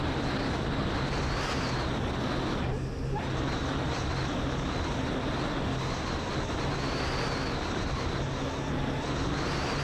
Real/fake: real